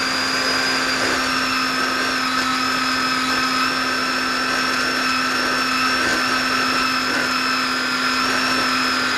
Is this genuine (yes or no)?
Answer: yes